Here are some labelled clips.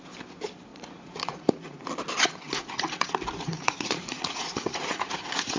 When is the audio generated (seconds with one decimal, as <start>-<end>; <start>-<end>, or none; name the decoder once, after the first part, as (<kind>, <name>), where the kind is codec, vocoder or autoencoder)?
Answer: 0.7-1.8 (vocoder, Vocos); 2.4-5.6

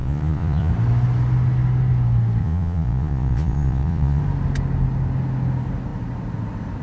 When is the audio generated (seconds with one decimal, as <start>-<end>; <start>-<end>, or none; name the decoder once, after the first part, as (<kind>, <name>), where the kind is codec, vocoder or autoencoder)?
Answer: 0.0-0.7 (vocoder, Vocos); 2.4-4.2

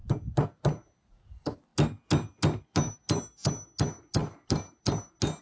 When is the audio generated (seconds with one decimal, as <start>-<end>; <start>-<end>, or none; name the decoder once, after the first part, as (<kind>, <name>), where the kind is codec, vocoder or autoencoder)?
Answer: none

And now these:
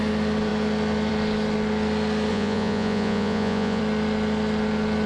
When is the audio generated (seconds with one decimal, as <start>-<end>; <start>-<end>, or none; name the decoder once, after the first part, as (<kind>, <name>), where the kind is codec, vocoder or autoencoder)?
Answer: 2.3-3.8 (vocoder, Vocos)

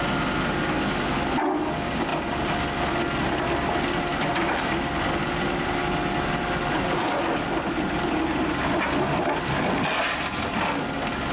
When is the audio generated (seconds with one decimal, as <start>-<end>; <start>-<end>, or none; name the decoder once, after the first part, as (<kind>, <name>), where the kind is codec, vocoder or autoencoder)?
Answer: none